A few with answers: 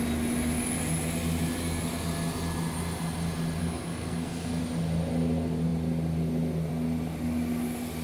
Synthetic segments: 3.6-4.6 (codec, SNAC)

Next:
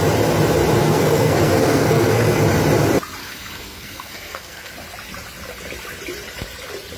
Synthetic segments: 0.8-2.4 (codec, SNAC); 3.2-4.7

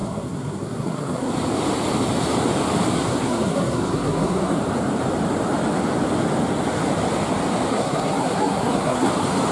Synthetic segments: 0.0-1.3 (codec, SNAC); 3.0-4.6; 7.7-9.1

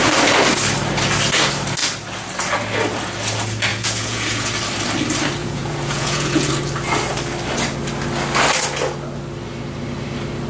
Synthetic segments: 3.7-4.5 (vocoder, Vocos); 5.4-6.5

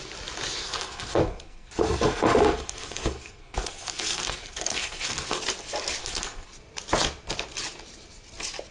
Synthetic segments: 0.6-5.4 (codec, SNAC); 6.0-6.5

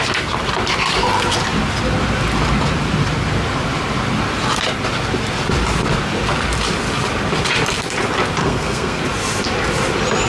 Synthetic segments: 8.4-9.0 (codec, SNAC)